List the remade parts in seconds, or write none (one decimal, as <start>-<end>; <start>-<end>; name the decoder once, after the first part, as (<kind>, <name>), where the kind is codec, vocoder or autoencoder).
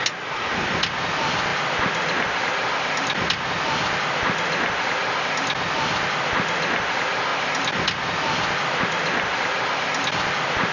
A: none